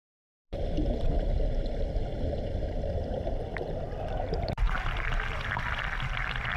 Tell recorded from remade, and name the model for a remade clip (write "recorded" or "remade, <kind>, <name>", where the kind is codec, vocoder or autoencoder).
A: remade, vocoder, BigVGAN v2